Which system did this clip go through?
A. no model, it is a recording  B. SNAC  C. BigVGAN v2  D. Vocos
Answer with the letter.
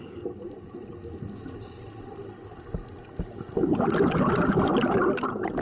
A